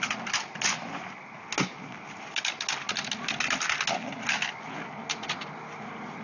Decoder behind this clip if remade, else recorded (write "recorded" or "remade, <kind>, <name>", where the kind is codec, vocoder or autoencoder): recorded